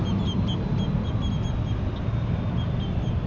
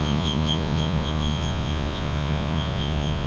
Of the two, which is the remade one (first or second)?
second